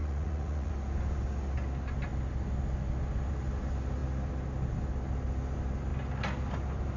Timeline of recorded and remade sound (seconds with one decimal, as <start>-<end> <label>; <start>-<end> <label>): 0.0-0.7 remade; 0.7-7.0 recorded